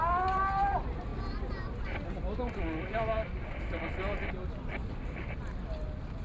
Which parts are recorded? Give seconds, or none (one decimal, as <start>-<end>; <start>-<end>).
0.0-6.2